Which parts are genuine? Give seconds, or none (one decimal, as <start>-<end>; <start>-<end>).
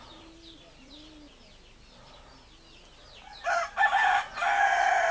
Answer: 0.0-3.3; 4.6-5.1